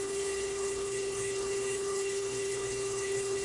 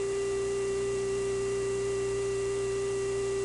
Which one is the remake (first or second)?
first